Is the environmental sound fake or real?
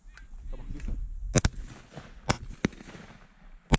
real